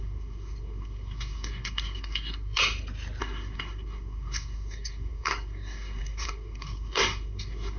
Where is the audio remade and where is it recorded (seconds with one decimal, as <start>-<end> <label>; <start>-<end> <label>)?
0.0-2.6 remade; 2.6-3.2 recorded; 3.2-7.8 remade